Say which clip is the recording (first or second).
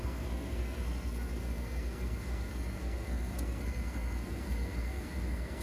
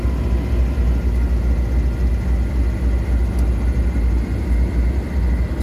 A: second